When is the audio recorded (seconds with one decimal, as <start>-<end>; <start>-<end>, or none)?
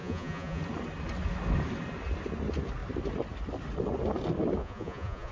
0.6-4.6